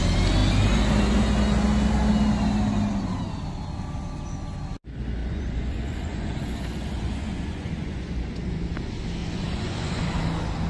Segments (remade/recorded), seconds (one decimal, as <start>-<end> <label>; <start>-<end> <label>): 0.0-5.2 recorded; 5.2-8.7 remade; 8.7-9.2 recorded; 9.2-10.2 remade; 10.2-10.7 recorded